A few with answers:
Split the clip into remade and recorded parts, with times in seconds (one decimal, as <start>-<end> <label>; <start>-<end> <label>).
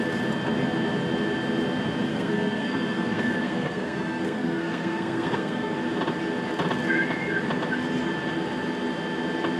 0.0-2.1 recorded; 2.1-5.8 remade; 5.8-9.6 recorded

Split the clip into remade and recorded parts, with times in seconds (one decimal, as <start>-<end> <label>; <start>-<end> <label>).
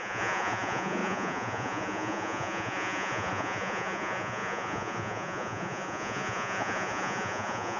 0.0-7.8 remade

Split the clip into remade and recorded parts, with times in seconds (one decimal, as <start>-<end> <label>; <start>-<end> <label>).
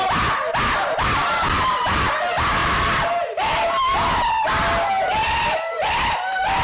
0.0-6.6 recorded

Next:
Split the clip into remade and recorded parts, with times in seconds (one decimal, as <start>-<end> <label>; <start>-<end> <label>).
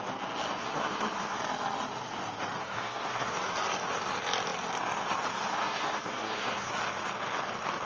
0.0-0.6 recorded; 0.6-1.4 remade; 1.4-2.6 recorded; 2.6-3.3 remade; 3.3-5.5 recorded; 5.5-6.7 remade; 6.7-7.9 recorded